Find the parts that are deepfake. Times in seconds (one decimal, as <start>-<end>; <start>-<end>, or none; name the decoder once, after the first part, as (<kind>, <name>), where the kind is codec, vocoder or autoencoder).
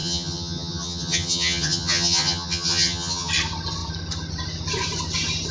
0.0-3.3 (vocoder, HiFi-GAN)